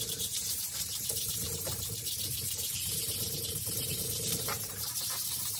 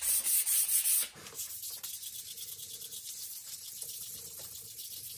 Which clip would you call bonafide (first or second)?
second